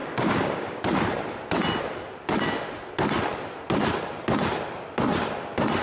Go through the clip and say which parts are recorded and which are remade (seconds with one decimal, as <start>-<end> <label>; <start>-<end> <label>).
0.0-0.8 remade; 0.8-5.8 recorded